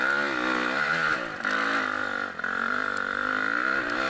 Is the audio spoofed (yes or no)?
no